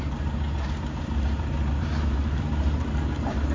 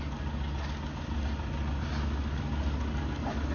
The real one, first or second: second